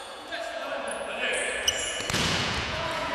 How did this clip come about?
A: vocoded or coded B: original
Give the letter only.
A